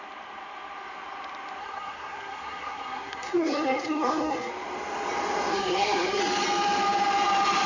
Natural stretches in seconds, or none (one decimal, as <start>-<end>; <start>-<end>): 0.0-1.6; 4.5-5.5; 6.2-7.7